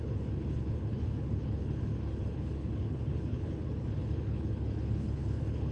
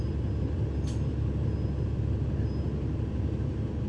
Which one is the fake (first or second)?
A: first